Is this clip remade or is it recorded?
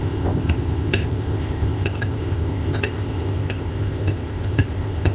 remade